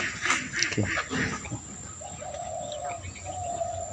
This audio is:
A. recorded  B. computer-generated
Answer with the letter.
A